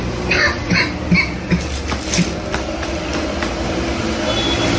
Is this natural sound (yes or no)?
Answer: yes